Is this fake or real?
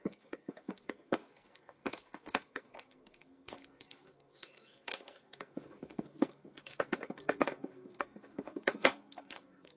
fake